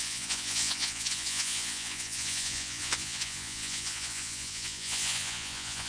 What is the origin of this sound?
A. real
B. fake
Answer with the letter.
B